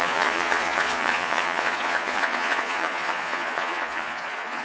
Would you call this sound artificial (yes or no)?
yes